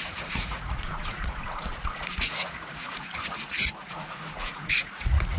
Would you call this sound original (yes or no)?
no